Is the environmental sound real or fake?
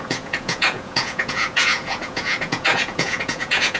fake